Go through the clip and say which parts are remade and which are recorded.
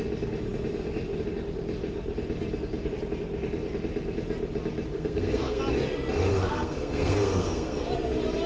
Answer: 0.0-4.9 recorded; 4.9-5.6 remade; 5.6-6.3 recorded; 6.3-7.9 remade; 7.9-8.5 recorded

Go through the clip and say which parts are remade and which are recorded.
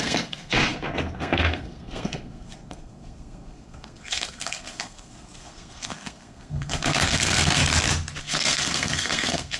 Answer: 0.0-7.6 remade; 7.6-8.2 recorded; 8.2-9.6 remade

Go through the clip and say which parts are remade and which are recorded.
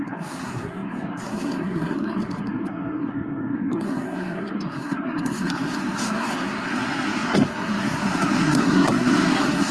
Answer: 0.0-9.7 remade